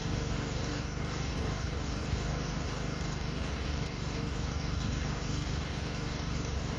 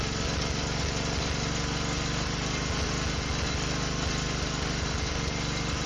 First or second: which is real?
second